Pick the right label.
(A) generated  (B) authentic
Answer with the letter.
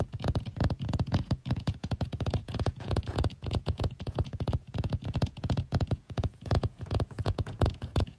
A